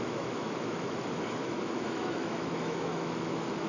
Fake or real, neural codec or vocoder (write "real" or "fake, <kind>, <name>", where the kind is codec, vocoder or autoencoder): fake, autoencoder, DAC-VAE